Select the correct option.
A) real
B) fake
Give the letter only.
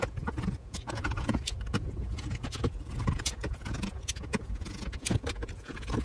B